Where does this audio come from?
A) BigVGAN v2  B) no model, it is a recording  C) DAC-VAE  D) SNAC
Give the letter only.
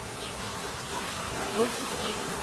D